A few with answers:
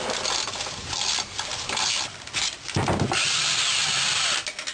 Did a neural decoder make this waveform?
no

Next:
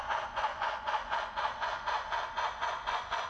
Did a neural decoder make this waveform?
yes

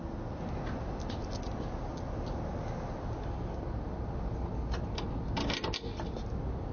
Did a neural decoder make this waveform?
no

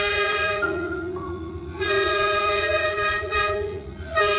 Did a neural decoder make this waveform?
yes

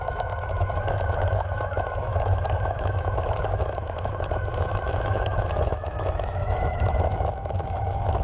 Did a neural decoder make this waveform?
yes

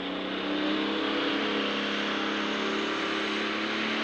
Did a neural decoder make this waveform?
no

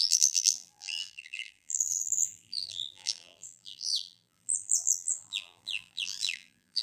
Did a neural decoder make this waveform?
yes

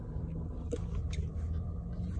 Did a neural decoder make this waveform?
no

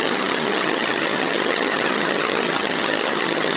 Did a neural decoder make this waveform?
yes